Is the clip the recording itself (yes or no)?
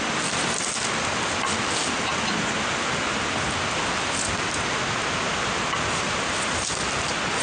yes